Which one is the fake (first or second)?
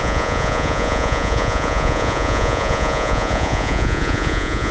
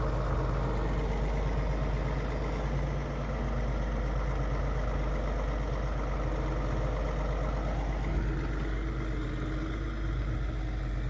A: first